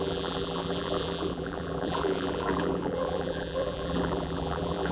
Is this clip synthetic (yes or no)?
yes